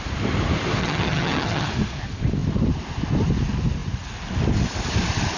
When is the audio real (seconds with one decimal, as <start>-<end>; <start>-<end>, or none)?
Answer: 0.0-0.8; 1.7-5.4